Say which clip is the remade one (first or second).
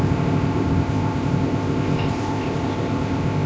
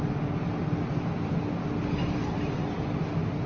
first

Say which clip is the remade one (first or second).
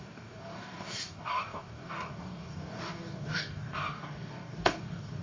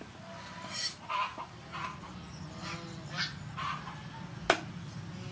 first